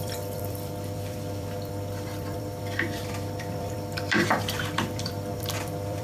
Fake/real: fake